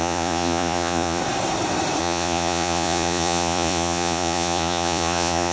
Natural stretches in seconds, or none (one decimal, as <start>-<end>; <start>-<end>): 1.2-2.0